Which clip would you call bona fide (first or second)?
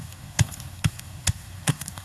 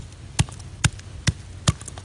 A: second